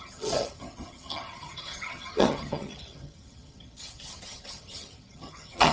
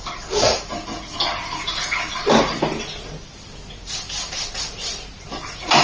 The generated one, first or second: first